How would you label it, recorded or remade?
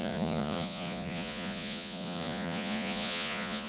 remade